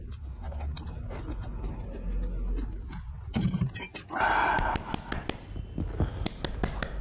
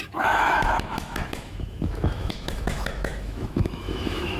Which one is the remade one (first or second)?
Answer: second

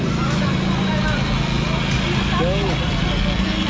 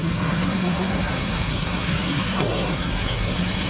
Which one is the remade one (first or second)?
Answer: second